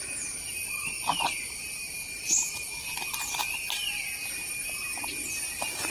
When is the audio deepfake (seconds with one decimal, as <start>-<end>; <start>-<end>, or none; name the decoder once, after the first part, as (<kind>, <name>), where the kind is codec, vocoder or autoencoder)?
none